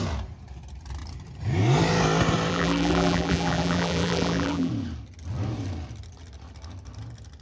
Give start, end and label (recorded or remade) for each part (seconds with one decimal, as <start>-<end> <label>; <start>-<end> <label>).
0.0-2.5 recorded; 2.5-4.7 remade; 4.7-7.4 recorded